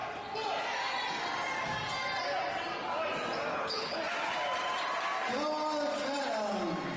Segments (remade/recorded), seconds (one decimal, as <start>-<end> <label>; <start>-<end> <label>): 0.0-3.5 recorded; 3.5-4.0 remade; 4.0-7.0 recorded